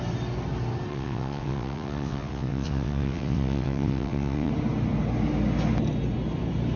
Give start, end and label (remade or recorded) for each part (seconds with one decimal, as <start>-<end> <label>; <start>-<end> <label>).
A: 0.0-0.9 recorded; 0.9-4.5 remade; 4.5-6.8 recorded